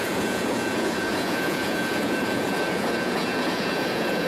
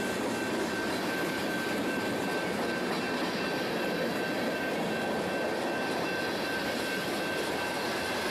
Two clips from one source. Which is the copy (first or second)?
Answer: first